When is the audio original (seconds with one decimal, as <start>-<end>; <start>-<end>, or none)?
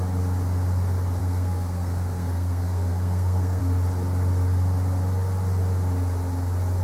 0.0-1.2; 3.6-6.8